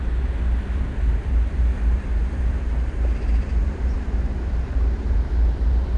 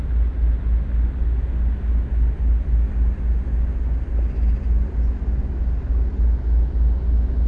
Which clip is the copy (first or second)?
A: first